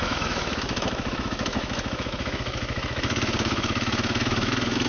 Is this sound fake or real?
fake